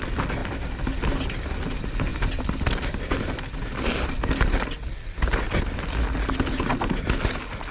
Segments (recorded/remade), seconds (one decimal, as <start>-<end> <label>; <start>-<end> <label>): 0.0-7.7 recorded